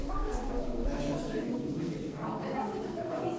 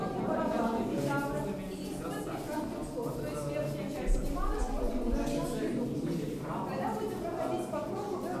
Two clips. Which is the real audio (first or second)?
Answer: second